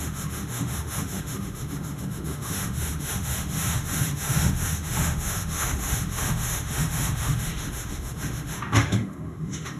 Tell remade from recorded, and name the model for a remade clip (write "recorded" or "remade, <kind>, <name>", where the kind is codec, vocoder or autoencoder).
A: remade, autoencoder, DAC-VAE